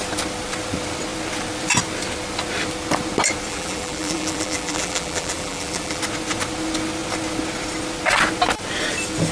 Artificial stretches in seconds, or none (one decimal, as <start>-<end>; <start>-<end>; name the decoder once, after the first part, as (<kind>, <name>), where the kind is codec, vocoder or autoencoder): 3.5-6.0 (vocoder, BigVGAN v2)